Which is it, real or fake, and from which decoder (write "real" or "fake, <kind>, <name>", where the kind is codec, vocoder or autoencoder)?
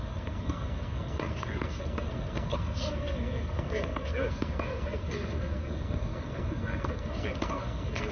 fake, codec, SNAC